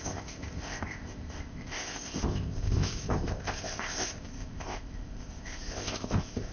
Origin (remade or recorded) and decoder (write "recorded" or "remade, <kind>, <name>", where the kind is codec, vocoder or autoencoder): remade, codec, ZipCodec